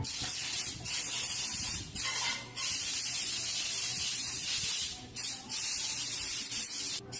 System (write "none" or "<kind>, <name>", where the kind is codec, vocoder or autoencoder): none